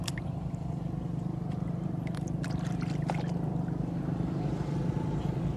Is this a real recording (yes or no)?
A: yes